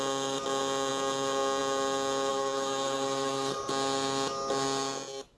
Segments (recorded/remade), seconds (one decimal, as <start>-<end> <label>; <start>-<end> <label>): 0.0-2.3 recorded; 2.3-3.7 remade; 3.7-5.4 recorded